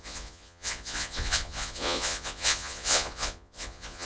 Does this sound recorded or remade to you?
remade